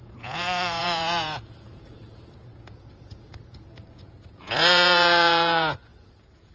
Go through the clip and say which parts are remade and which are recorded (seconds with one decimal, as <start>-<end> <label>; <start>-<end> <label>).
0.0-6.5 remade